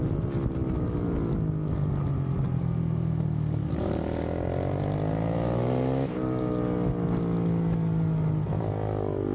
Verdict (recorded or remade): recorded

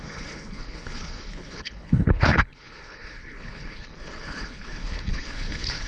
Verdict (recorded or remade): remade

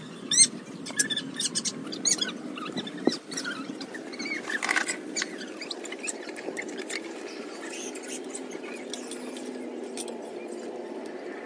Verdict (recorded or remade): recorded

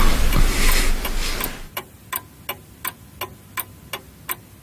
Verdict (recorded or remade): recorded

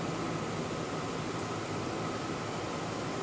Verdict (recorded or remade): recorded